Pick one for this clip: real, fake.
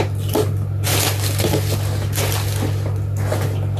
real